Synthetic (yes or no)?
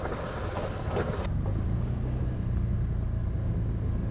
no